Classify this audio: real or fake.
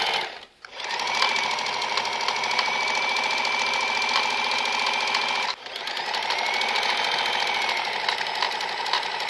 real